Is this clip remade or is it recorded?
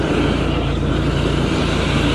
remade